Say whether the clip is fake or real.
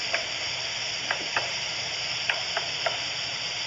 real